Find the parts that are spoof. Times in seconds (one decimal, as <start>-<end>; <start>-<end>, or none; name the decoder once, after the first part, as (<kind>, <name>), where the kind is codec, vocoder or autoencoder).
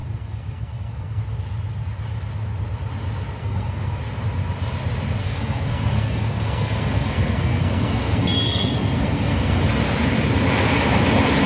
0.0-1.2 (codec, SNAC); 3.4-4.0; 5.2-9.6